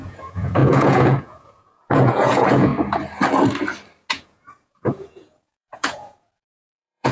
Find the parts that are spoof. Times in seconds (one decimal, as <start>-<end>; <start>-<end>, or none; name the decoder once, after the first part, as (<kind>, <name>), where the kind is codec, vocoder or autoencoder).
0.0-2.7 (vocoder, Vocos); 4.1-7.1